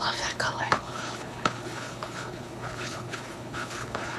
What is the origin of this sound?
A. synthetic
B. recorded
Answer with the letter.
A